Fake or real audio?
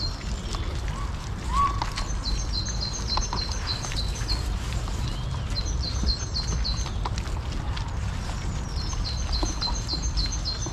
real